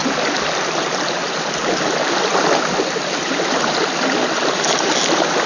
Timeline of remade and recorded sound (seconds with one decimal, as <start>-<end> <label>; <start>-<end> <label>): 0.0-5.5 recorded